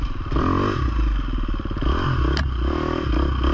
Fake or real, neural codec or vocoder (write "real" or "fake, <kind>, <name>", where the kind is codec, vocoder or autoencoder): real